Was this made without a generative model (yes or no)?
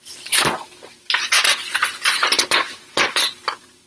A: yes